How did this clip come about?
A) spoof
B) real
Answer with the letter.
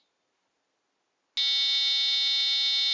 B